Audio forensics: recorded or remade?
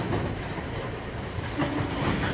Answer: recorded